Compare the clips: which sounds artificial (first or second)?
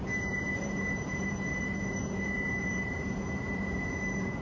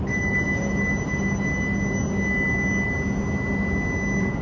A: first